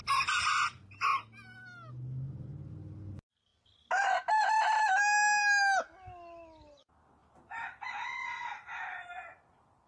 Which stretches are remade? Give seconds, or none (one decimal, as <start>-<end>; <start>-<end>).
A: none

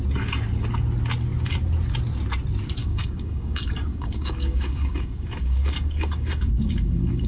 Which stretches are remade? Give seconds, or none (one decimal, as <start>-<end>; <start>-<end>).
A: 2.8-7.3

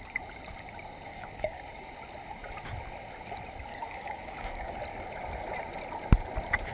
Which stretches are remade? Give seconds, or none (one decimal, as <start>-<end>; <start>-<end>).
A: 1.1-1.6; 3.7-4.8

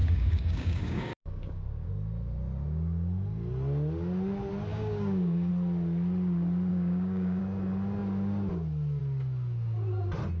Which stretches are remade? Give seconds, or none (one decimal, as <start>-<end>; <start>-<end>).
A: 0.0-1.9; 4.7-5.5; 6.7-7.4

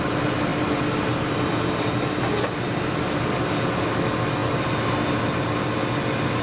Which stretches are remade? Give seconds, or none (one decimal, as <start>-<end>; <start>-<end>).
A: none

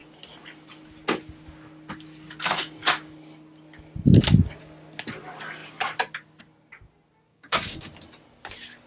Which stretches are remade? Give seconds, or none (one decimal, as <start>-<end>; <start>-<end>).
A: 7.3-7.9